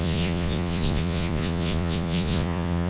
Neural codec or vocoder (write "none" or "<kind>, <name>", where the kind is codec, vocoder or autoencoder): vocoder, Vocos